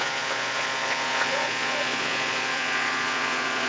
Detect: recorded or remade remade